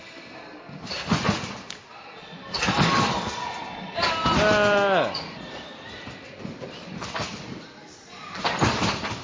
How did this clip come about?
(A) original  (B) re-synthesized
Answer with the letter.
A